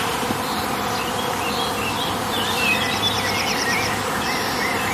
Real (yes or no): yes